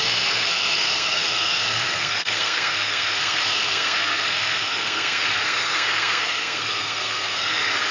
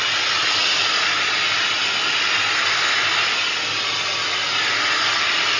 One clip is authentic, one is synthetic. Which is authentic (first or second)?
second